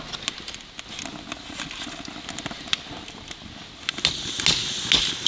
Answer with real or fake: real